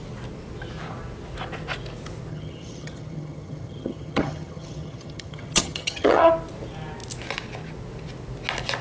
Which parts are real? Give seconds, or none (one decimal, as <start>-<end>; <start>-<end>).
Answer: 0.0-2.3; 6.3-8.8